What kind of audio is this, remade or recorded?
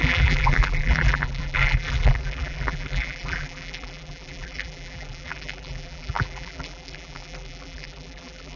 remade